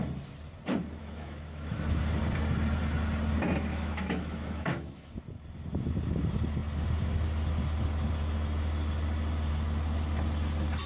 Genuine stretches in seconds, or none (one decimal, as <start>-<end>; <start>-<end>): 0.0-1.0; 2.0-3.7; 5.1-10.9